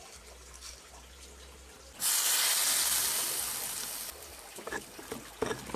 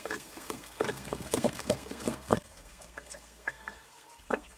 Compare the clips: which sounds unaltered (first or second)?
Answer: first